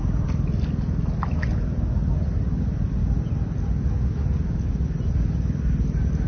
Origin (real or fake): real